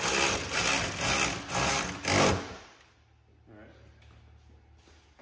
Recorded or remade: recorded